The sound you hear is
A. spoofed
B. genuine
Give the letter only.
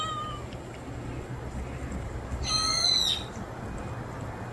B